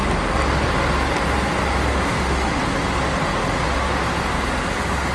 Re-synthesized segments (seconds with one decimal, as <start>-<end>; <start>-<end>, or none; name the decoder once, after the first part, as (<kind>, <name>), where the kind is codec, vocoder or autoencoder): 1.9-2.6 (autoencoder, DAC-VAE)